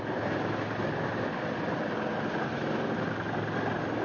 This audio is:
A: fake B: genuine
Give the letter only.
B